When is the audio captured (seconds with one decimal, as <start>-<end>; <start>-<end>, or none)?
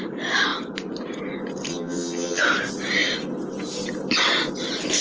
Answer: 0.0-1.7; 2.4-5.0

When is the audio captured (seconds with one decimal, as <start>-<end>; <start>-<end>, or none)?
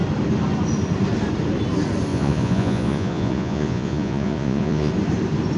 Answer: 0.0-2.1; 4.9-5.6